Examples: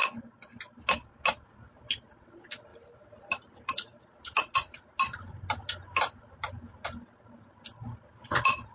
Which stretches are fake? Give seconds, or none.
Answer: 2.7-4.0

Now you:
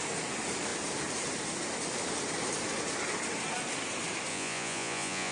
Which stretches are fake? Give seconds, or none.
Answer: 4.3-5.3

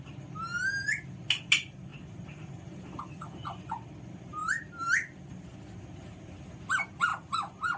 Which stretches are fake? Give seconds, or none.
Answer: 1.9-3.0; 7.1-7.8

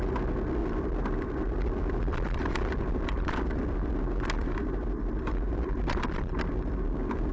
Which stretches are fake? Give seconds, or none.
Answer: 0.6-3.9; 4.4-7.3